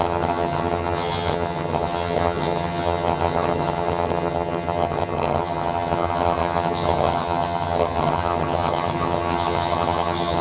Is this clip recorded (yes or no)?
no